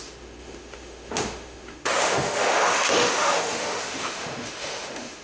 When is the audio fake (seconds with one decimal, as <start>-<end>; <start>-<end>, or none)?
0.0-5.2